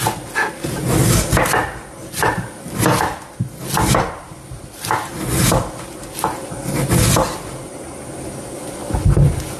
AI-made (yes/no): no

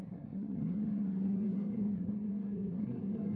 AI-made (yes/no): yes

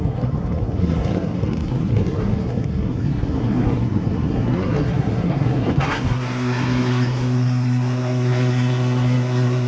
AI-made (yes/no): yes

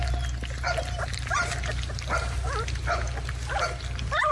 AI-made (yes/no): no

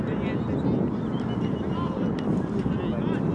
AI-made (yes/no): no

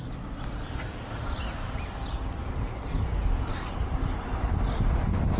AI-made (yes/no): no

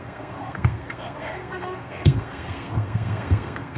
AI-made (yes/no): yes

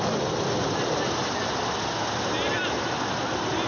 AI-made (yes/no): no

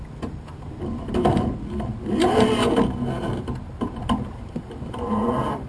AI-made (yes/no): no